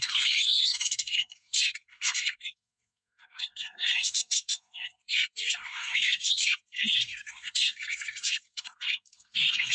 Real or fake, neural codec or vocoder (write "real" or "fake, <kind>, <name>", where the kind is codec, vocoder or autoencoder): fake, codec, SNAC